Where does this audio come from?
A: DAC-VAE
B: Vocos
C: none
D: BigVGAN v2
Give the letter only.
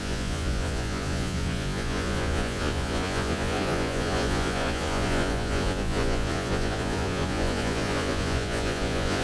B